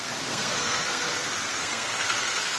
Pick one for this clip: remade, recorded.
remade